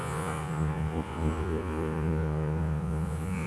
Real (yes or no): no